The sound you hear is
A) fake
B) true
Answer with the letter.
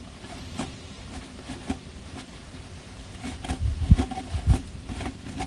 B